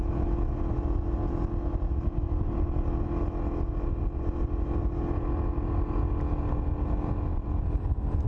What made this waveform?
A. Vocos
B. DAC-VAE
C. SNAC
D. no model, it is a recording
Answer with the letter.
D